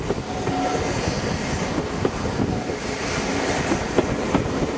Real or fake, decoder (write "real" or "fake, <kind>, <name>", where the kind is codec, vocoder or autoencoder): real